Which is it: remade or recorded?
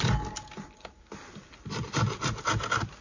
recorded